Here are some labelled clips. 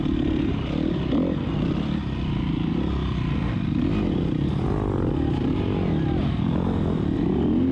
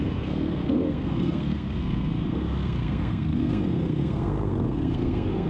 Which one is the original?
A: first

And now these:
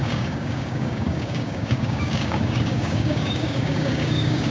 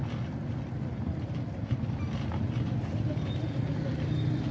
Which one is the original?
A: second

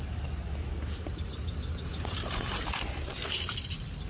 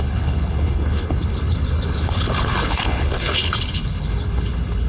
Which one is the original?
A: first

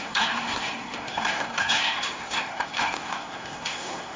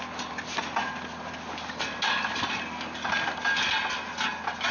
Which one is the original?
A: second